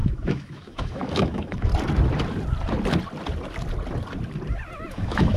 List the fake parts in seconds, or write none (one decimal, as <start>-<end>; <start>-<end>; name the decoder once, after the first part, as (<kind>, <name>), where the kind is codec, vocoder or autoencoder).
0.0-1.7 (autoencoder, DAC-VAE); 4.9-5.4